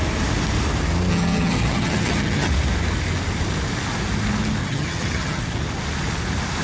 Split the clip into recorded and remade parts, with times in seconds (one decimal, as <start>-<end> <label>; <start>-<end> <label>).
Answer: 0.0-1.1 recorded; 1.1-2.5 remade; 2.5-4.6 recorded; 4.6-5.4 remade; 5.4-6.6 recorded